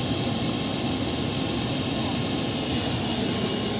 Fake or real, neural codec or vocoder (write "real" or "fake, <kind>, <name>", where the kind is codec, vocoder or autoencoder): real